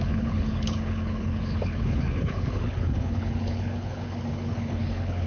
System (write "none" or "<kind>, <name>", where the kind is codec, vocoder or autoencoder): codec, HILCodec